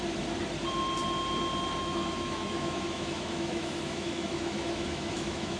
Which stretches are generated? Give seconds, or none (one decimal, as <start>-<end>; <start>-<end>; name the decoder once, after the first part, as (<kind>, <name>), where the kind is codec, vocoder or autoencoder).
1.8-5.6 (autoencoder, DAC-VAE)